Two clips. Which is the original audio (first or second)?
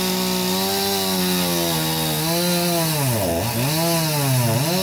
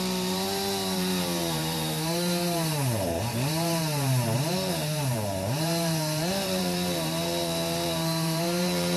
first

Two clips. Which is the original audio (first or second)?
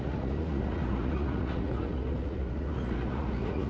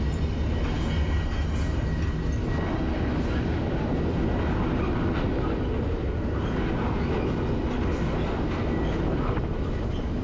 second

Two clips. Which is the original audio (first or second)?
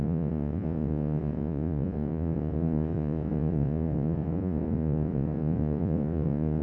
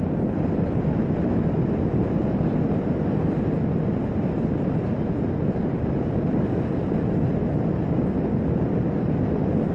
second